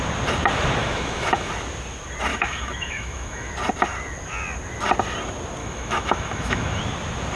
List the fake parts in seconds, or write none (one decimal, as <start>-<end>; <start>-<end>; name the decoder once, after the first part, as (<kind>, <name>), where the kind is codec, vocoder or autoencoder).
0.8-1.5 (autoencoder, DAC-VAE); 2.3-3.5; 5.6-6.8